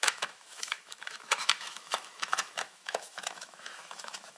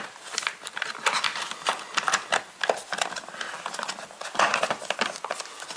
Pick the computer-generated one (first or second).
first